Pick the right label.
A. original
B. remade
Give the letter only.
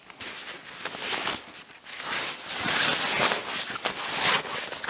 A